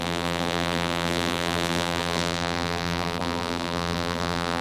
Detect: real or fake fake